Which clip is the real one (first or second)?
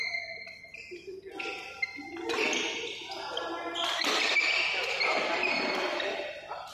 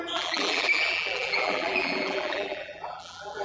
first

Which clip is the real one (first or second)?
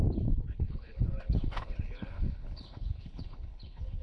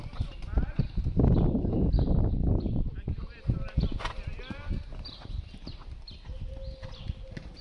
second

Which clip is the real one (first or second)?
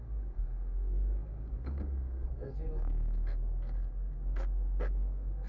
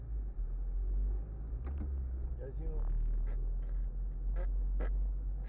second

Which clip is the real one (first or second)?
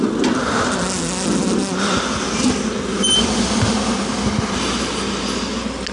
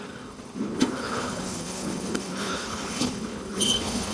first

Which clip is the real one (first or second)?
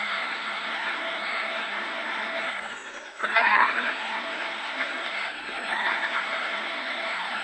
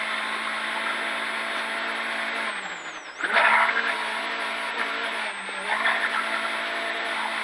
second